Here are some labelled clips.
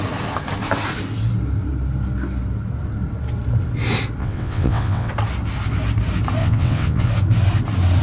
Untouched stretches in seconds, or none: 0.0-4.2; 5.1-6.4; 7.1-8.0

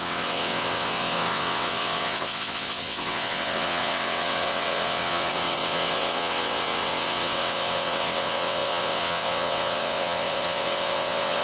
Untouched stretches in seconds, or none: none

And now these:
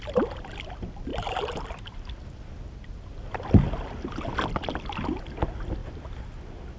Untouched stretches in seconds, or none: 0.0-6.8

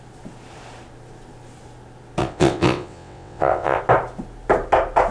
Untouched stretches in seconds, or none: 0.0-2.2; 3.8-5.1

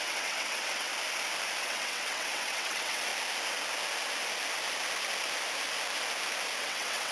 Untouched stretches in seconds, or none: 0.9-1.6; 3.1-6.6

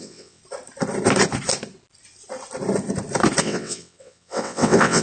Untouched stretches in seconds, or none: 0.4-3.4

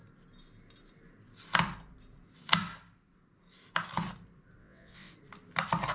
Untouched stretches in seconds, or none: 0.0-4.6; 5.1-5.9